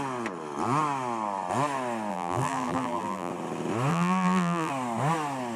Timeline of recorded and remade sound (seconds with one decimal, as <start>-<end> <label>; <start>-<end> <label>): 0.0-2.1 recorded; 2.1-3.3 remade; 3.3-3.9 recorded; 3.9-4.7 remade; 4.7-5.6 recorded

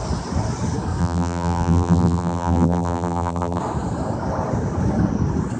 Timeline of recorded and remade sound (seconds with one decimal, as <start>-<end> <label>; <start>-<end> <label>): 0.0-1.0 recorded; 1.0-3.6 remade; 3.6-5.6 recorded

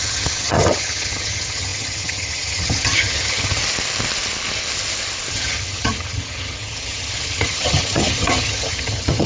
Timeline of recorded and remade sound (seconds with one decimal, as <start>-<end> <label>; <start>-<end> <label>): 0.0-3.6 remade; 3.6-5.3 recorded; 5.3-9.3 remade